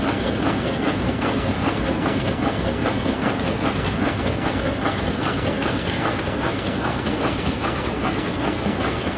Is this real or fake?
fake